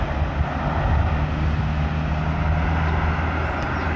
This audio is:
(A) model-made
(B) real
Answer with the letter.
B